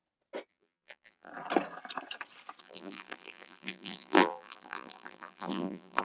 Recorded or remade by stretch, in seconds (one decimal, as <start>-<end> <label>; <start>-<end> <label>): 0.0-0.5 recorded; 0.5-1.3 remade; 1.3-2.6 recorded; 2.6-6.0 remade